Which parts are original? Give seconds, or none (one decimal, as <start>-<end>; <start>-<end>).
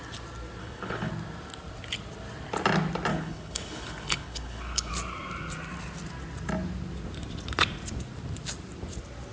0.0-0.6; 1.1-3.1; 4.9-9.3